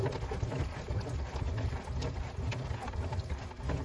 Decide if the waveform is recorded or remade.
recorded